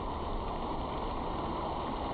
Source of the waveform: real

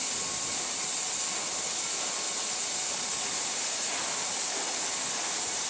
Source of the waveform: real